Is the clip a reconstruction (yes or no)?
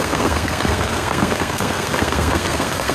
yes